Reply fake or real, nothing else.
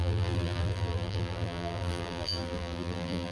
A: fake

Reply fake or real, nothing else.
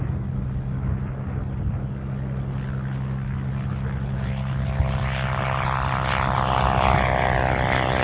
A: real